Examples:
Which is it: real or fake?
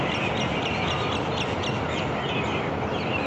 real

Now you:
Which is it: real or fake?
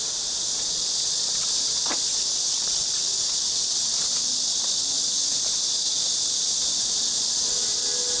real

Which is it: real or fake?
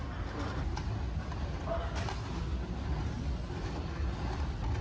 real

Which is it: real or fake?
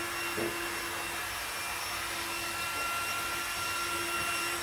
real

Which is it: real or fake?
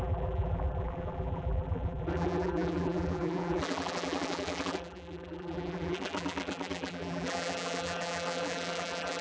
fake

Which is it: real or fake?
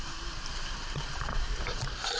fake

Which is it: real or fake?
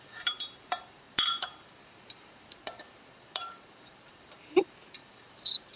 fake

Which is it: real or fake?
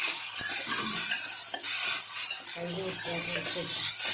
real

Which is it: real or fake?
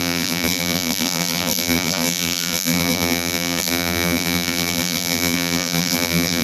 fake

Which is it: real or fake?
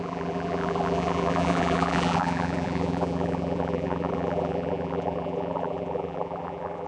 fake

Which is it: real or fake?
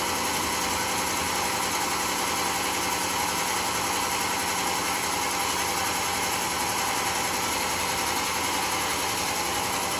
real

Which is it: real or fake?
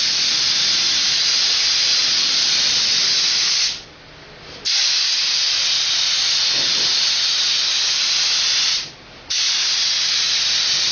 real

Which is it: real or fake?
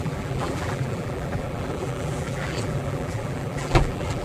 fake